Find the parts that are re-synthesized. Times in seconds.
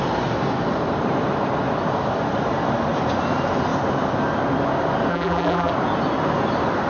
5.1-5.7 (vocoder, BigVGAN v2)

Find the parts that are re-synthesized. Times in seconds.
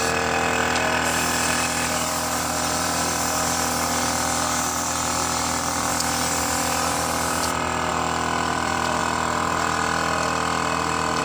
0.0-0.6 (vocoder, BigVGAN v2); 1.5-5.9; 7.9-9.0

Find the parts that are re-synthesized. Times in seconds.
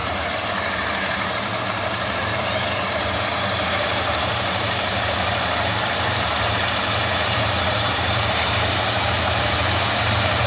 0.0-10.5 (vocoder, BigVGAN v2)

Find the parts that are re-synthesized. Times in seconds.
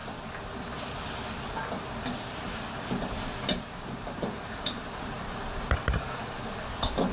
none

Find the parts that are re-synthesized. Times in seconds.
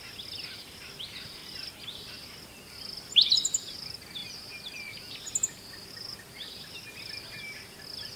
none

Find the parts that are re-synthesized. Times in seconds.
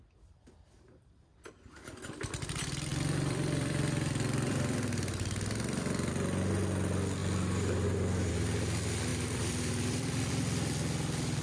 2.9-6.1 (vocoder, BigVGAN v2); 9.1-10.3